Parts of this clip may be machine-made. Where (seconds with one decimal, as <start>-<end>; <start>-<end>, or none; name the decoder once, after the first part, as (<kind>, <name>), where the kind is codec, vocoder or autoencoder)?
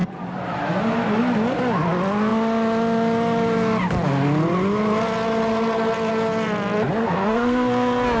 7.0-8.2 (codec, SNAC)